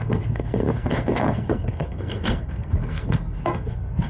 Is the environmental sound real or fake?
fake